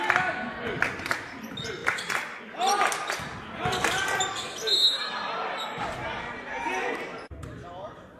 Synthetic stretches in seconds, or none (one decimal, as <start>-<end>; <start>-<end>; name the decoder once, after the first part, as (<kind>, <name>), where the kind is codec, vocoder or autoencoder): none